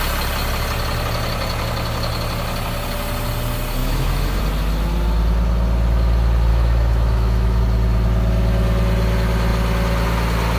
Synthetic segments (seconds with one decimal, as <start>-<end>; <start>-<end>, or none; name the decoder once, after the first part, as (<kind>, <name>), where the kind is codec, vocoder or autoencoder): 3.8-4.4 (autoencoder, DAC-VAE); 6.5-7.6